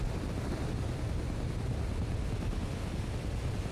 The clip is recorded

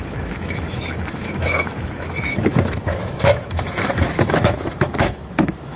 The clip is remade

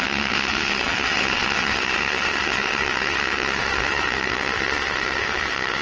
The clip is remade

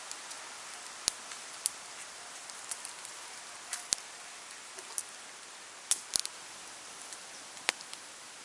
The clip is recorded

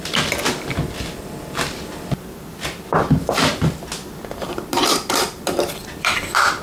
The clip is remade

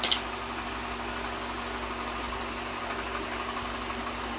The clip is recorded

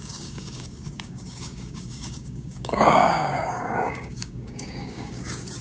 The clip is remade